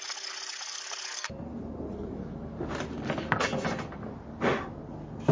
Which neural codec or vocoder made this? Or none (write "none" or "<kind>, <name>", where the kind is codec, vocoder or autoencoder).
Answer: none